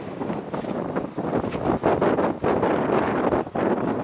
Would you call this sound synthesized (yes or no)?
no